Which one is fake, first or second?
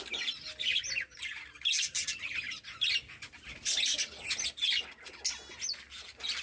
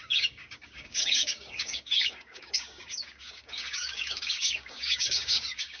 second